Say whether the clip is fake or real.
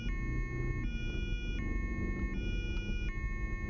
real